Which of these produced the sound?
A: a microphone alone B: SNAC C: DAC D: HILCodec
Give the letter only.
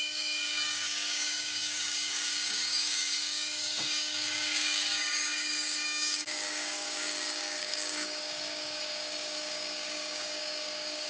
C